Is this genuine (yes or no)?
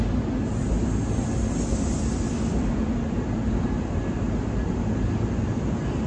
yes